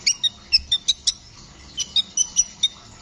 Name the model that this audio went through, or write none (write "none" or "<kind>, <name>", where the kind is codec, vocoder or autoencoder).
none